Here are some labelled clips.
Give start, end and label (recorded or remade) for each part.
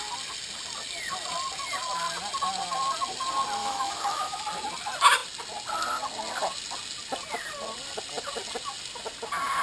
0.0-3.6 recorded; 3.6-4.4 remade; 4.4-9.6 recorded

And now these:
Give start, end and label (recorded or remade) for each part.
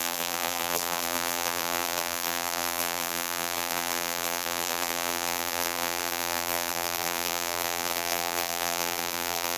0.0-9.6 remade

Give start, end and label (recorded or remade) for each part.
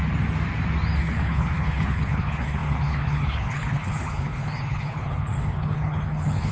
0.0-1.0 recorded; 1.0-6.5 remade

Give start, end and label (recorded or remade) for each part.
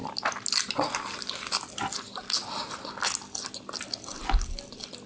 0.0-5.1 recorded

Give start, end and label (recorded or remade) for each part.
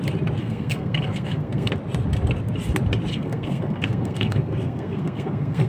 0.0-0.4 recorded; 0.4-1.7 remade; 1.7-3.1 recorded; 3.1-5.7 remade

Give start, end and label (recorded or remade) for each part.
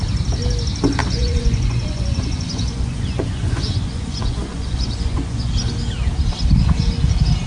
0.0-1.0 recorded; 1.0-5.5 remade; 5.5-7.5 recorded